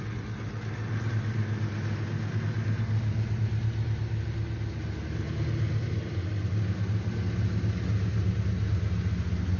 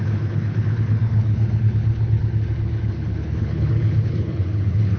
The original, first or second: first